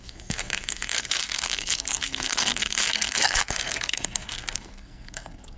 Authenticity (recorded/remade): remade